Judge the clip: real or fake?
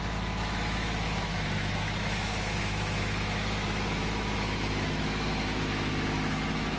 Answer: fake